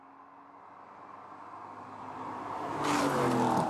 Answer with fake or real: real